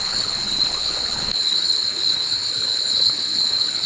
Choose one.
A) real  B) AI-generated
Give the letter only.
B